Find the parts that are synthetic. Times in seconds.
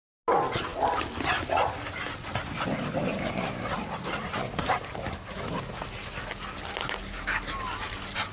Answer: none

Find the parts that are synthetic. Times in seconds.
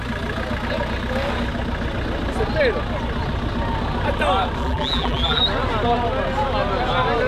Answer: 4.6-5.4 (vocoder, BigVGAN v2)